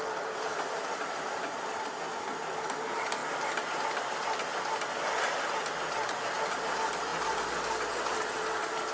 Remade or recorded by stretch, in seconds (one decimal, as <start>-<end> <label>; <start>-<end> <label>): 0.0-8.9 recorded